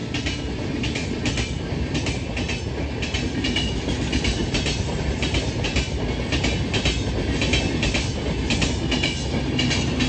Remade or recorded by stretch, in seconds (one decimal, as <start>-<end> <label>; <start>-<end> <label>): 0.0-10.1 recorded